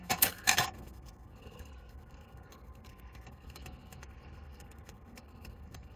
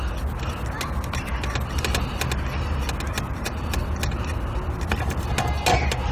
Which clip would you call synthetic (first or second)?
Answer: first